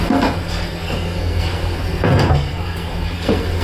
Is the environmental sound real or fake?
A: fake